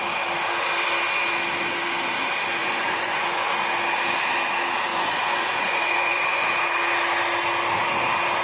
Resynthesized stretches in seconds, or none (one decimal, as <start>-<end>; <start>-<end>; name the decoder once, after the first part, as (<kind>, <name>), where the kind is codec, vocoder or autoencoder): 2.6-3.5 (vocoder, Vocos); 4.9-6.6